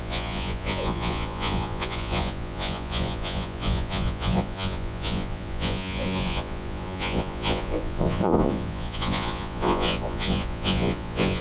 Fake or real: fake